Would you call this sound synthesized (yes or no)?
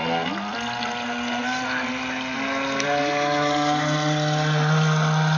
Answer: no